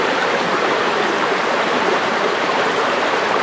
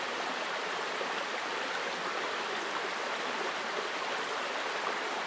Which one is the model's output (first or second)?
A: first